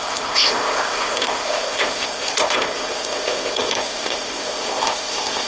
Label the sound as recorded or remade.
remade